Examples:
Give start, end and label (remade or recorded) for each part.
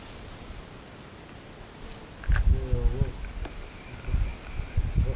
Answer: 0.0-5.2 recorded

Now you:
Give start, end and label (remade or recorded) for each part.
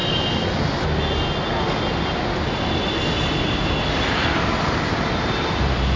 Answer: 0.0-6.0 recorded